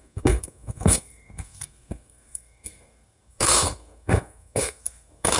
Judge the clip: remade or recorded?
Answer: remade